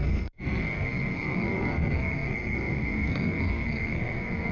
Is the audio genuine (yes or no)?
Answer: no